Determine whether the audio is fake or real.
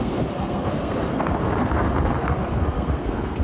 fake